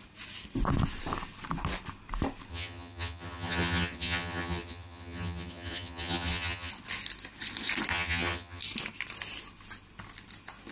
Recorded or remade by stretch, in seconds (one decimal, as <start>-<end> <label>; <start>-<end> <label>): 0.0-2.5 recorded; 2.5-6.7 remade; 6.7-7.9 recorded; 7.9-8.6 remade; 8.6-10.7 recorded